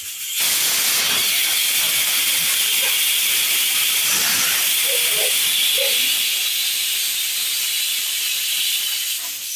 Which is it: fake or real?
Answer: real